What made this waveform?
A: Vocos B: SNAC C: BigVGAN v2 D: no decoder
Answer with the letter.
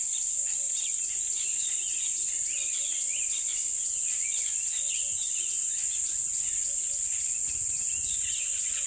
A